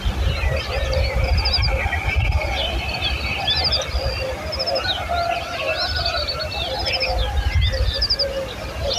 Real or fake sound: real